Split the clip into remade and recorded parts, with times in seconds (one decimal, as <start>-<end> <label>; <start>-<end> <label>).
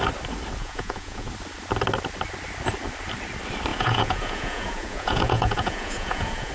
0.0-0.6 recorded; 0.6-1.3 remade; 1.3-3.7 recorded; 3.7-6.5 remade